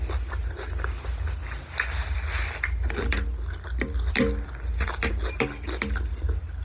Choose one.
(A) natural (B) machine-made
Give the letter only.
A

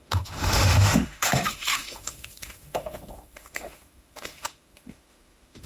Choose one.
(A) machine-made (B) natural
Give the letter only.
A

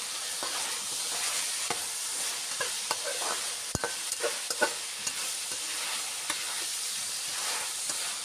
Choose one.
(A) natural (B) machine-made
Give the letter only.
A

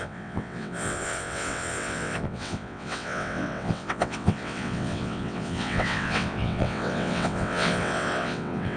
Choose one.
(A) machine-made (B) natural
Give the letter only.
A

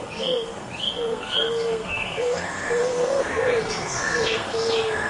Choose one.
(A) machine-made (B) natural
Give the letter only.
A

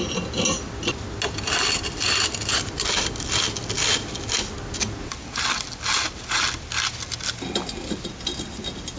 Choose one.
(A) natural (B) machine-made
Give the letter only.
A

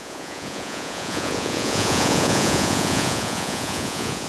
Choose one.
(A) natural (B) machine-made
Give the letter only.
B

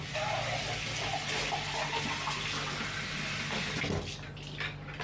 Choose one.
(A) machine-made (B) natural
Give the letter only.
B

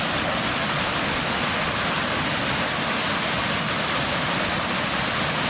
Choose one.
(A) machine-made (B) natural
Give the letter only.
B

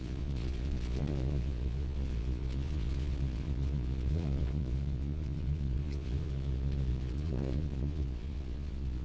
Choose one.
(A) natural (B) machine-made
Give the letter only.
B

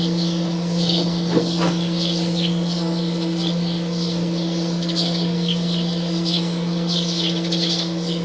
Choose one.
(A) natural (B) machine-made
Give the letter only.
B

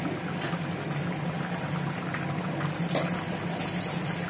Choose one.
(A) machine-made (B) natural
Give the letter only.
B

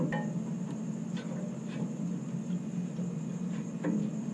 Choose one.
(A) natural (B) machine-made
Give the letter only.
A